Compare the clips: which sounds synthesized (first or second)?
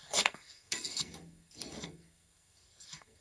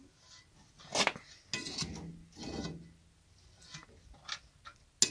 first